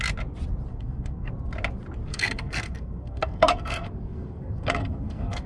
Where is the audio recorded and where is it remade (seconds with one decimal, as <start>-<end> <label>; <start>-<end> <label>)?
0.0-0.7 recorded; 0.7-1.3 remade; 1.3-2.1 recorded; 2.1-5.5 remade